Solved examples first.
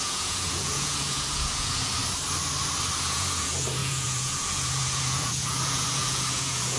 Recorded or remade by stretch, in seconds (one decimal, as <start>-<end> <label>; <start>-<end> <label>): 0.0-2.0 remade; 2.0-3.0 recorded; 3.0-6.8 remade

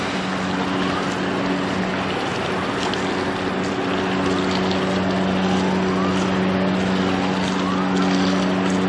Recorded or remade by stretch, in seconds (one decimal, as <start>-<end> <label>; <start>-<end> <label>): 0.0-8.9 recorded

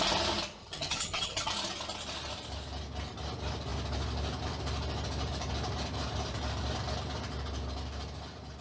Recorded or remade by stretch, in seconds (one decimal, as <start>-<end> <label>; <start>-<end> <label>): 0.0-0.6 recorded; 0.6-1.5 remade; 1.5-8.6 recorded

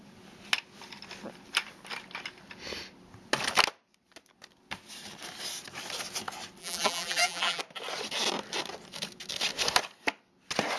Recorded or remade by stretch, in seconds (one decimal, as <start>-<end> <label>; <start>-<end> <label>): 0.0-6.6 recorded; 6.6-7.6 remade; 7.6-10.8 recorded